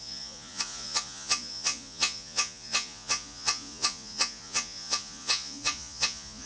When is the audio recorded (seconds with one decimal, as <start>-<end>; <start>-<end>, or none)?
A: none